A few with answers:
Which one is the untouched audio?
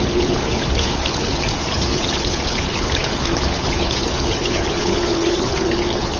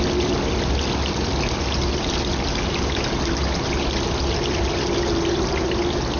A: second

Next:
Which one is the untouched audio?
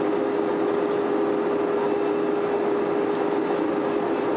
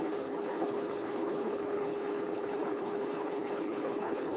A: first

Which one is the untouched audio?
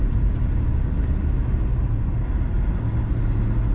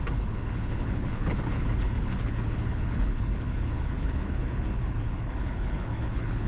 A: first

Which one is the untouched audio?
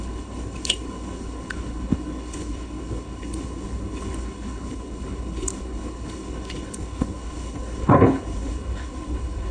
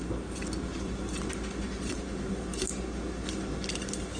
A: second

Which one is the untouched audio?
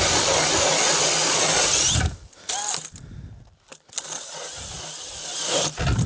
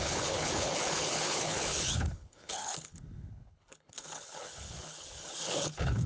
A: first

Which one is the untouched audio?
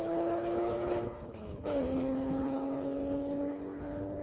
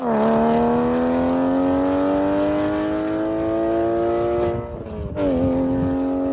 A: second